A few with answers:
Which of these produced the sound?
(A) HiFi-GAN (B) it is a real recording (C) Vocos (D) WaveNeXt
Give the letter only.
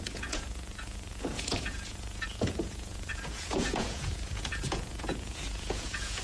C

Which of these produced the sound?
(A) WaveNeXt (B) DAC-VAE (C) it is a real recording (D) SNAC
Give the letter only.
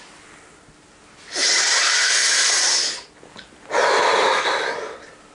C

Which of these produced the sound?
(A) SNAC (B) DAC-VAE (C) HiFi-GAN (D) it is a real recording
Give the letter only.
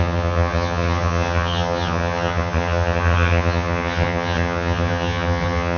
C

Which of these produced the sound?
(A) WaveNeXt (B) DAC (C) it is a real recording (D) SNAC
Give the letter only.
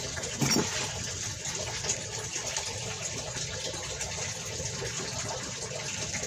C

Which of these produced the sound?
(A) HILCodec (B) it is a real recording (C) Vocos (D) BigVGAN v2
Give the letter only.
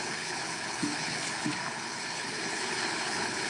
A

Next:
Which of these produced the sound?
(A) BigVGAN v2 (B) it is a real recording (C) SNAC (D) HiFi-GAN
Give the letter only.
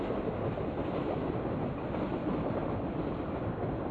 B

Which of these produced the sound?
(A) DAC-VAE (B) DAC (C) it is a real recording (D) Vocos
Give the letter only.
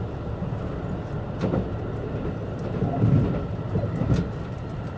C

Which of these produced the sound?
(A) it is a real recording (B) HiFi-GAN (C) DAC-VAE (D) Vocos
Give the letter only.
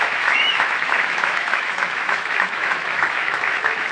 C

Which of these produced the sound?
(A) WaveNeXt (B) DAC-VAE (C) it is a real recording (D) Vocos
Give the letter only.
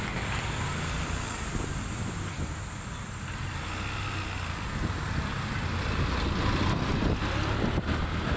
C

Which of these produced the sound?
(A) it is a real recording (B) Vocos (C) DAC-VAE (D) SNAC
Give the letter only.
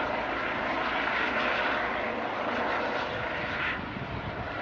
A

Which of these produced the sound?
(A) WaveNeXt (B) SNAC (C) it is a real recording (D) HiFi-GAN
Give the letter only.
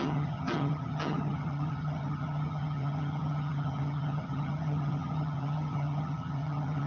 D